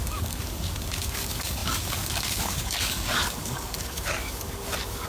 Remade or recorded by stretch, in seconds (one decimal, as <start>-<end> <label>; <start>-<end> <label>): 0.0-5.1 remade